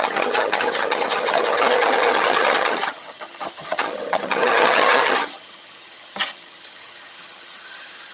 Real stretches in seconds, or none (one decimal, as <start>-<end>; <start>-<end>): none

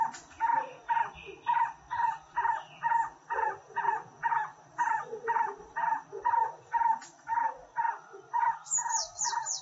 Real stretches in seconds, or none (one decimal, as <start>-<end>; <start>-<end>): 0.0-3.2; 3.8-4.5; 5.8-9.6